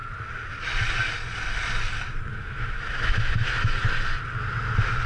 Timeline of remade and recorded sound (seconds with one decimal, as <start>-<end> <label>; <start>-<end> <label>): 0.0-2.3 recorded; 2.3-3.8 remade; 3.8-5.1 recorded